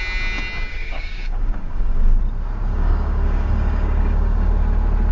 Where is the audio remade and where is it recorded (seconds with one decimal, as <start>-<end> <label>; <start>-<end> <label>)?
0.0-0.7 recorded; 0.7-2.2 remade; 2.2-2.7 recorded; 2.7-4.5 remade; 4.5-5.1 recorded